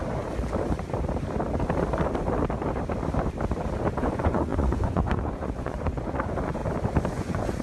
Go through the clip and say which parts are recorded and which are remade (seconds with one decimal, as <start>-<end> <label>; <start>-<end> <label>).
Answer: 0.0-4.0 recorded; 4.0-6.6 remade; 6.6-7.1 recorded; 7.1-7.6 remade

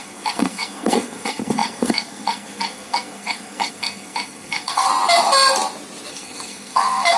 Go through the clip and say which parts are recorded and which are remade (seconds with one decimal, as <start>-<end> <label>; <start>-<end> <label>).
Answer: 0.0-4.9 remade; 4.9-6.1 recorded; 6.1-7.2 remade

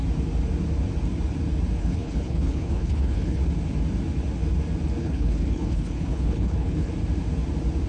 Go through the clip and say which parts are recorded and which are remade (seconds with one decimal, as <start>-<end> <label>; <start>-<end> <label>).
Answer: 0.0-1.8 recorded; 1.8-3.4 remade; 3.4-5.0 recorded; 5.0-6.9 remade; 6.9-7.9 recorded

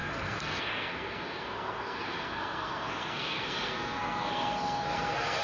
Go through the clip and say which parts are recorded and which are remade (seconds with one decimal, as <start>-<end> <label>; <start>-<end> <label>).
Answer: 0.0-5.4 remade

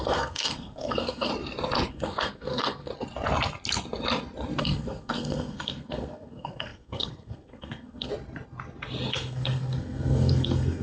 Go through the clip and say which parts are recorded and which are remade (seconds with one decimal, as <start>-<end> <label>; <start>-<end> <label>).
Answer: 0.0-1.3 remade; 1.3-1.9 recorded; 1.9-2.9 remade; 2.9-4.6 recorded; 4.6-8.1 remade; 8.1-9.1 recorded; 9.1-10.8 remade

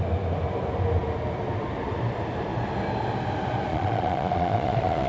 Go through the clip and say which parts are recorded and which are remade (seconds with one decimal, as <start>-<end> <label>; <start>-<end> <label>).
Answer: 0.0-3.7 recorded; 3.7-5.1 remade

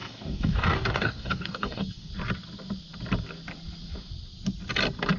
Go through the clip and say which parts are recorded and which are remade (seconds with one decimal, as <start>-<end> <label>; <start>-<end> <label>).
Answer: 0.0-2.1 remade; 2.1-5.2 recorded

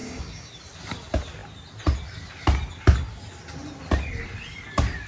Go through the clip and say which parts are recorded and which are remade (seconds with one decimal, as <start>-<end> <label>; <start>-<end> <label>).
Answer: 0.0-0.5 remade; 0.5-5.1 recorded